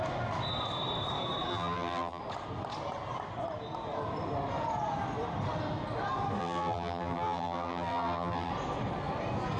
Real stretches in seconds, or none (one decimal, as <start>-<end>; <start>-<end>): 0.0-1.5; 2.2-6.4; 8.5-9.6